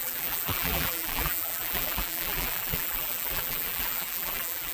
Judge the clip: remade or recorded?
remade